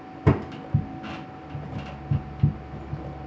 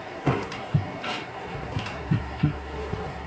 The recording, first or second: first